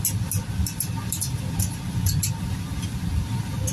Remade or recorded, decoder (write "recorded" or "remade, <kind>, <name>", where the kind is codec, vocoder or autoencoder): recorded